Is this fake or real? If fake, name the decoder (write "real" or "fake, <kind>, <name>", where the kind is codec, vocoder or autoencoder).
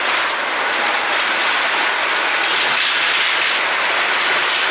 real